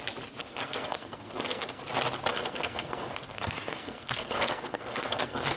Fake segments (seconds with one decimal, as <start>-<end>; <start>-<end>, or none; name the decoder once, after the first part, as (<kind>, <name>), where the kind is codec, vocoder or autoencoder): 0.4-1.8 (codec, SNAC); 2.3-5.6